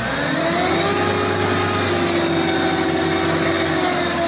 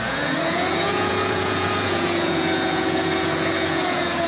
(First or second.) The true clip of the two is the first